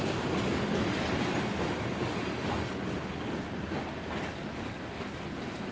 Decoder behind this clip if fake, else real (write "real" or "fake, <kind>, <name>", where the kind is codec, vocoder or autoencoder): real